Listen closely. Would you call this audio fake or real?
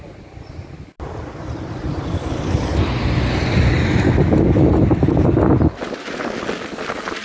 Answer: real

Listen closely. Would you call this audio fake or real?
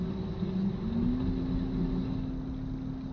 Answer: real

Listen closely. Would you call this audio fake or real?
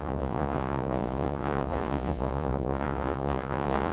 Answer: fake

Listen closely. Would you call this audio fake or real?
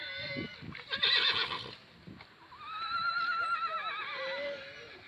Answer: real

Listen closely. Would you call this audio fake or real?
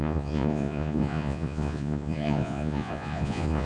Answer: fake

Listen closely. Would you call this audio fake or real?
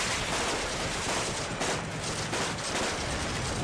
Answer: real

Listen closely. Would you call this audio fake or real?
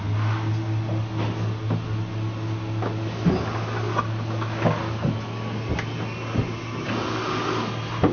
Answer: real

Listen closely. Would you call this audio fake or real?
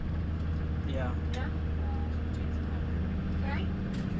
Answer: real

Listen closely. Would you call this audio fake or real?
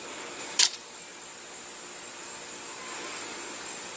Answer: real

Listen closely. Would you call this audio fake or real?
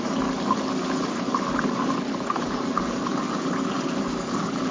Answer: real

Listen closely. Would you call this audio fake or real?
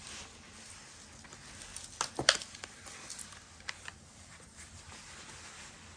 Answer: real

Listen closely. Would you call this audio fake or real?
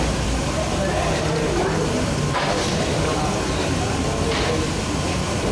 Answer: real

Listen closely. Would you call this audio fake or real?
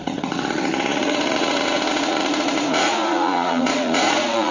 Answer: fake